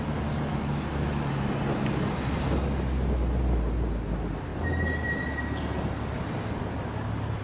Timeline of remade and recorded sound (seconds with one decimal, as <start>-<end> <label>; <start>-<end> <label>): 0.0-0.5 recorded; 0.5-1.3 remade; 1.3-7.4 recorded